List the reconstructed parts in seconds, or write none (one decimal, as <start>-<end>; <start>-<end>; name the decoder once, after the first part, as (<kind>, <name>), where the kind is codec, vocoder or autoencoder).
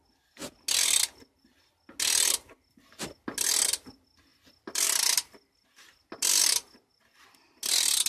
none